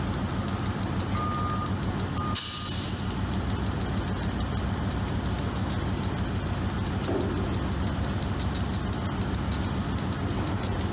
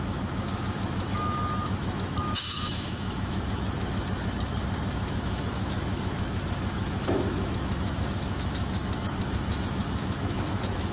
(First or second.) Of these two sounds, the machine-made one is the second